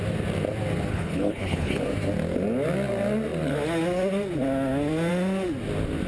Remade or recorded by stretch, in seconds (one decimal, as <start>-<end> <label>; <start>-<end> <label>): 0.0-0.9 recorded; 0.9-1.8 remade; 1.8-6.1 recorded